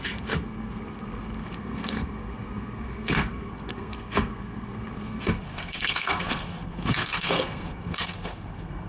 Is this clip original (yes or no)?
no